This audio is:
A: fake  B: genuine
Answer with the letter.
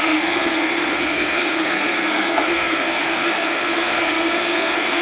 A